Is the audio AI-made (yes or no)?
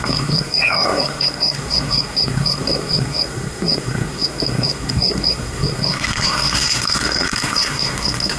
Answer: yes